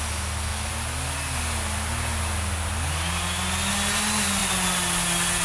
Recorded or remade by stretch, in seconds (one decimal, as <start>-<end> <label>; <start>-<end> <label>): 0.0-5.4 recorded